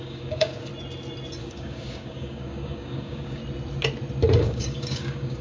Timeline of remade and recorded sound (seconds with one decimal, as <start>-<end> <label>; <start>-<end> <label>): 0.0-0.7 remade; 0.7-1.4 recorded; 1.4-3.4 remade; 3.4-4.4 recorded; 4.4-5.4 remade